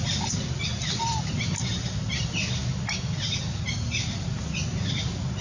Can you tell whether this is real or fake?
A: real